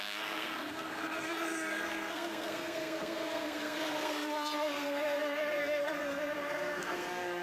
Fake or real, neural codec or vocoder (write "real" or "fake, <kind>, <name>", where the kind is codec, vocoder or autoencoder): fake, codec, SNAC